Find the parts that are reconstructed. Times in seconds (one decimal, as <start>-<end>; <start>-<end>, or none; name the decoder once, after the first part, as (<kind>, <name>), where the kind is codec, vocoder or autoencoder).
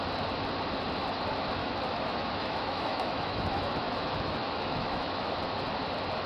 1.6-5.3 (autoencoder, DAC-VAE)